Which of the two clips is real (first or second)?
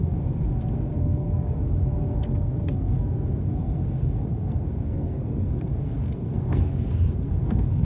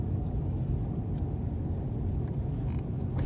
second